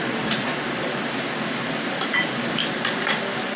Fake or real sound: real